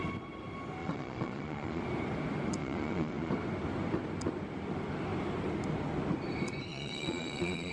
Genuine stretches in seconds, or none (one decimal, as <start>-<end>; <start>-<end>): 0.0-0.8; 1.8-2.6; 3.3-6.7

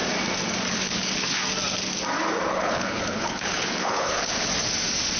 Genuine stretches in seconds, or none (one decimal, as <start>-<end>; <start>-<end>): 0.0-0.7; 1.4-2.5; 4.5-5.2

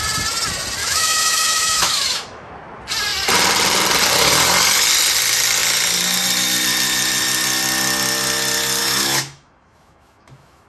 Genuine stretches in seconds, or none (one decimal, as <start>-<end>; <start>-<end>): 0.0-0.8; 2.5-8.8

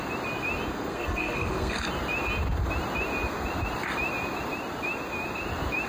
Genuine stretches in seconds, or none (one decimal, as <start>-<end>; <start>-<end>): 0.0-0.7; 1.9-5.9

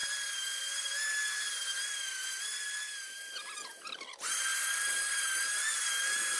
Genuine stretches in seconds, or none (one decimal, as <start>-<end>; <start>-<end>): 3.8-4.5; 5.0-6.4

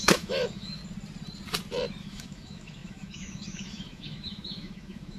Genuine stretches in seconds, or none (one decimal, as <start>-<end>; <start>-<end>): 0.8-2.0